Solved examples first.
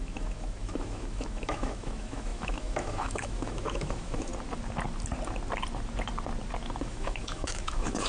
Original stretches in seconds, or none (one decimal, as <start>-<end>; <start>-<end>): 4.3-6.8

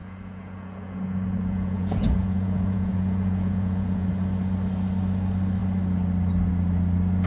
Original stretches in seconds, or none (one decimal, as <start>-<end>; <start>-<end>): 4.1-7.3

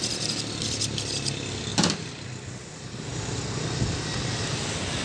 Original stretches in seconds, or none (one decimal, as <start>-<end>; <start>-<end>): 0.0-5.0

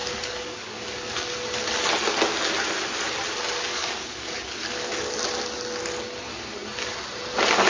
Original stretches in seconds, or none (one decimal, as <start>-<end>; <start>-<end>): 1.3-3.7; 5.1-7.7

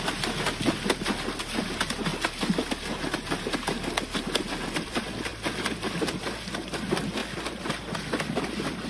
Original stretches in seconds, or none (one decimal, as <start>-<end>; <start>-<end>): 2.1-4.4